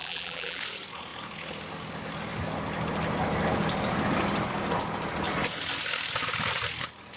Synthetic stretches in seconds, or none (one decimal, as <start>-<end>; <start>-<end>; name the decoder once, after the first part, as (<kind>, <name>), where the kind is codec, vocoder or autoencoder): 0.0-0.6 (vocoder, BigVGAN v2)